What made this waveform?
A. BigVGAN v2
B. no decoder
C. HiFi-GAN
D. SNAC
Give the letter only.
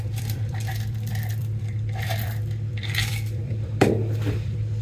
A